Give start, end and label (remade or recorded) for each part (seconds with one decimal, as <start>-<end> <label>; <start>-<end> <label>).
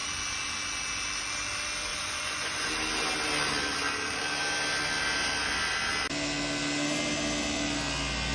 0.0-1.9 recorded; 1.9-2.7 remade; 2.7-8.3 recorded